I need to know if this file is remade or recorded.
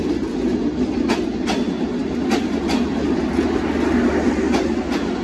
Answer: recorded